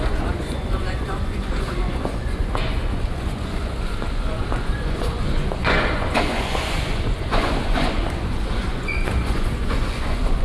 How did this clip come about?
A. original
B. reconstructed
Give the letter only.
B